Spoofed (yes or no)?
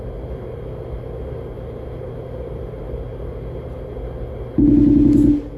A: no